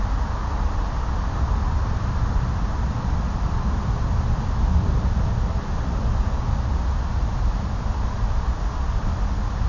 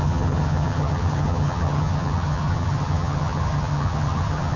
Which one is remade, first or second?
second